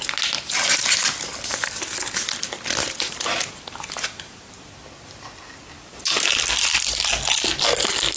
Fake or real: real